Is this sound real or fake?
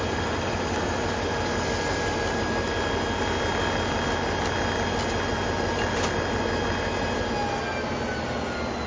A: real